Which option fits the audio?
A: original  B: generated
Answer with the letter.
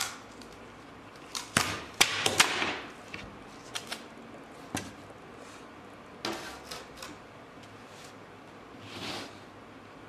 A